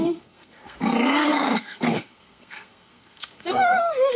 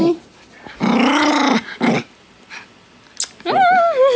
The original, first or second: second